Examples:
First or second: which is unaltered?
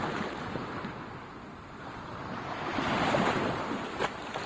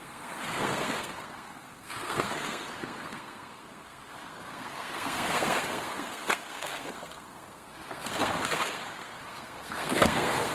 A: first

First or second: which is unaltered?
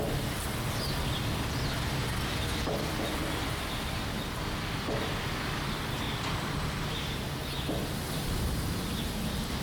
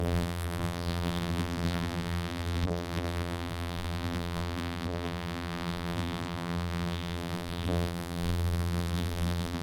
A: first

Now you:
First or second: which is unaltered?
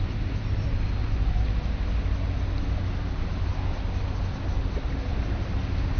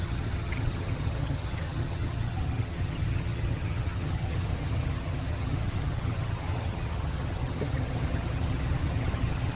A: first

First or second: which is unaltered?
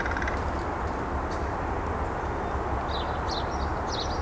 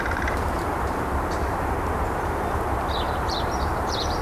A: first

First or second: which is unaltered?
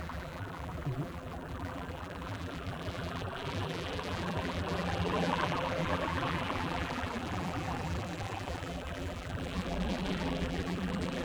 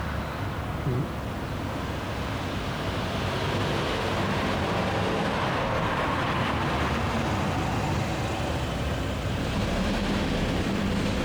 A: second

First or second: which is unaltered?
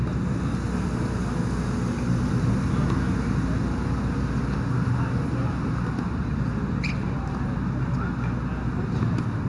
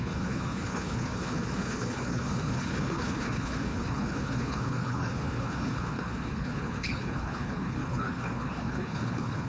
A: first